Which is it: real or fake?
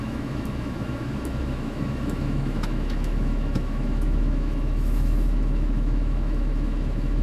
fake